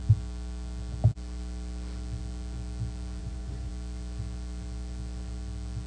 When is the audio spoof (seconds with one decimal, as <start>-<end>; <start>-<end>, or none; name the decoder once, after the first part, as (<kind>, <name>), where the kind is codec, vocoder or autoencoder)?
3.2-3.7 (vocoder, Vocos)